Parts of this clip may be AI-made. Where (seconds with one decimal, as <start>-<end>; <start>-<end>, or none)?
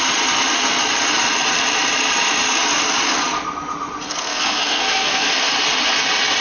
4.1-5.3